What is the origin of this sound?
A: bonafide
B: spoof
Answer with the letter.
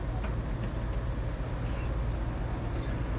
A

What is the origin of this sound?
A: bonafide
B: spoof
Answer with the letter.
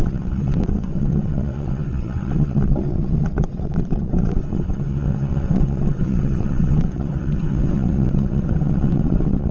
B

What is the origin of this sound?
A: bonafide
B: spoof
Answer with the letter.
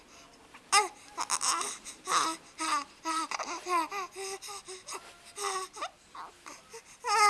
B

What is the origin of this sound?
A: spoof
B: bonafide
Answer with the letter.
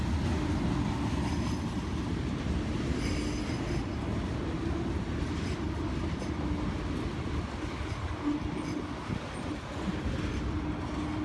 B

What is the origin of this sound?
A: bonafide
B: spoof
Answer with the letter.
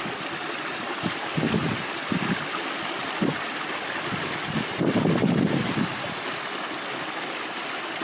A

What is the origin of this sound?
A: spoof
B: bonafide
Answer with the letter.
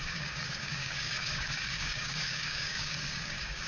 A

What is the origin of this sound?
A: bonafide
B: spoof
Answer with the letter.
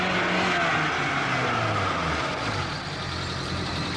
A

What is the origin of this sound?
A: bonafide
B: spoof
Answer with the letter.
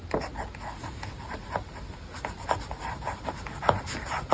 A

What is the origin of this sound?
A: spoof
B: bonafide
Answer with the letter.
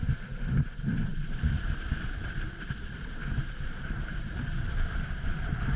A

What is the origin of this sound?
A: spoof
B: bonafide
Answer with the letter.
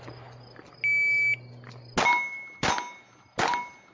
B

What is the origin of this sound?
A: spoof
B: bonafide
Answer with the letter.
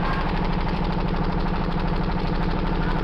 A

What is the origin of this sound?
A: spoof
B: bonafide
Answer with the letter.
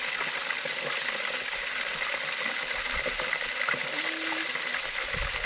B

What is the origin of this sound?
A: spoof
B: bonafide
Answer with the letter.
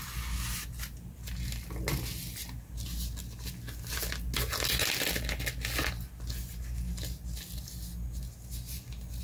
B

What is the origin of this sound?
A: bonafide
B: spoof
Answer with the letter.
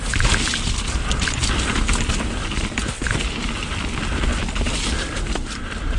A